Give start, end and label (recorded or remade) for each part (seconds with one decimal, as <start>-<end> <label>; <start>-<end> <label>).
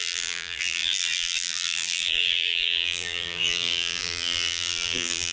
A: 0.0-5.3 remade